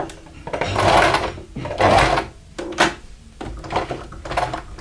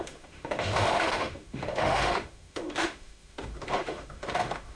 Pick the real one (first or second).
first